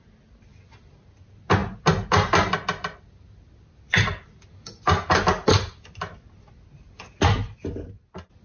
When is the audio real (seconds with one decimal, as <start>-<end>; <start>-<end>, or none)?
0.0-8.4